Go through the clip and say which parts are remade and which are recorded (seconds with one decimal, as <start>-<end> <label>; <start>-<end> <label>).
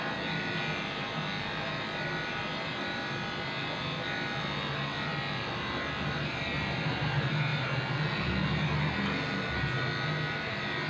0.0-10.9 recorded